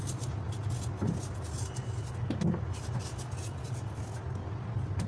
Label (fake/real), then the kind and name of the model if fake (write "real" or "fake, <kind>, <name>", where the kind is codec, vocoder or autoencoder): real